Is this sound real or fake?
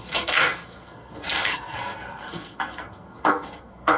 fake